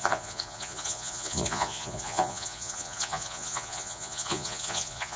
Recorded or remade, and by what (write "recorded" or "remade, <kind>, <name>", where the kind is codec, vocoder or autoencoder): remade, vocoder, Vocos